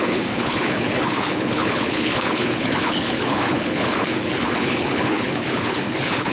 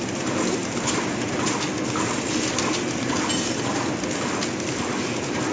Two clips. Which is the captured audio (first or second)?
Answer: second